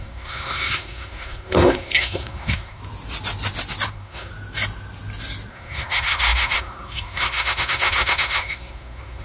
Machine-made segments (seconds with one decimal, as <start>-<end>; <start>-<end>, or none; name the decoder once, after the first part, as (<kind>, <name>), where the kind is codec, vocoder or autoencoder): 0.0-2.8 (codec, SNAC); 3.9-4.3; 5.5-9.2